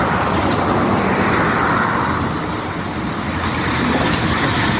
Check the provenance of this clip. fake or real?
real